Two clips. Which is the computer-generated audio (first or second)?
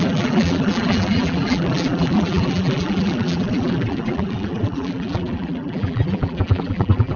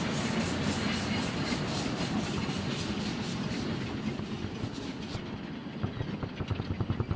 first